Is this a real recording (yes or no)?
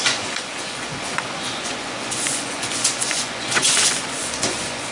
no